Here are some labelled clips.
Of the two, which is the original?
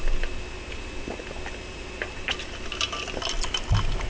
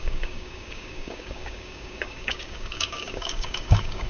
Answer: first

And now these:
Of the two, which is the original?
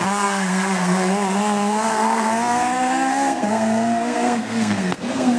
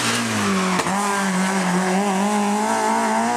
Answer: second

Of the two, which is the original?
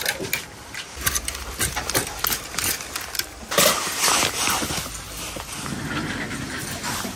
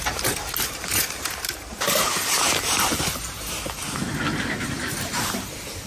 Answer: first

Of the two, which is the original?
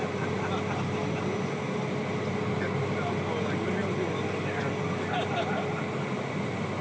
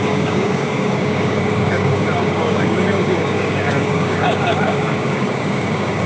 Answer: first